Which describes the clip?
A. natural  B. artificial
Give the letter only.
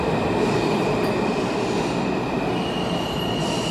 A